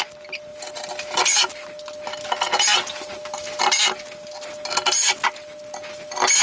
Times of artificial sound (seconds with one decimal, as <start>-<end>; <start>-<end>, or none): none